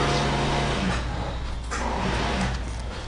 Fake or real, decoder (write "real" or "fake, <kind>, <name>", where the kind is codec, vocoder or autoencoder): real